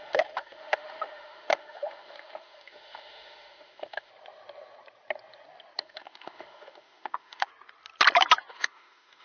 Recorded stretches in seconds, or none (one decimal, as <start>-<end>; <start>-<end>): 4.1-5.8; 7.5-8.5